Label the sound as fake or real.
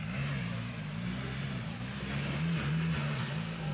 real